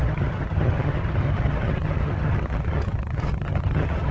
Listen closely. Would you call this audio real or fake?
fake